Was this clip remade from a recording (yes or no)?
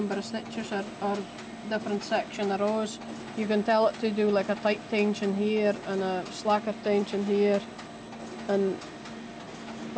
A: no